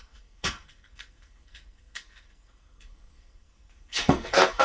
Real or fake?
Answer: fake